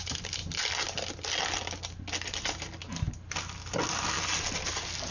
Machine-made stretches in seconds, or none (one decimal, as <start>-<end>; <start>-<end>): none